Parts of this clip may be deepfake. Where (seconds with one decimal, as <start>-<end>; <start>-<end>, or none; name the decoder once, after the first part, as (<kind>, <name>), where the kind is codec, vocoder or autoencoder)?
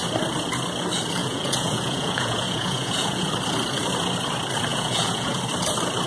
1.2-3.3 (vocoder, Vocos); 4.7-5.4